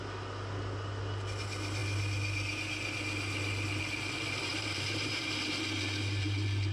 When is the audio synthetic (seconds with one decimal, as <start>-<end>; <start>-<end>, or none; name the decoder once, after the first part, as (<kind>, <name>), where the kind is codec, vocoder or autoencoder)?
4.5-5.2 (vocoder, BigVGAN v2)